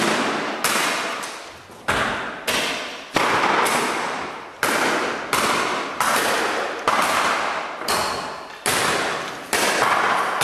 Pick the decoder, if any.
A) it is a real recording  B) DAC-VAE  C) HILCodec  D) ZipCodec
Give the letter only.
A